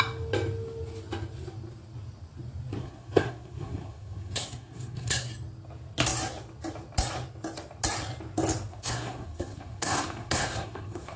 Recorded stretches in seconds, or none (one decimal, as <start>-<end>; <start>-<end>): 0.0-2.8; 5.3-8.7